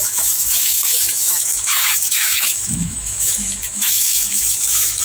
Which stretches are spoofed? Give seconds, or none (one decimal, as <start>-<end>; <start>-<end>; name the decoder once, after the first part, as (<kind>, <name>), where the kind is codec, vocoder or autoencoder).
0.0-5.0 (autoencoder, DAC-VAE)